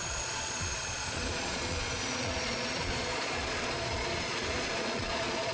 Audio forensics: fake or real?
fake